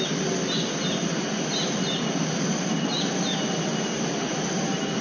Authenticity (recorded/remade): recorded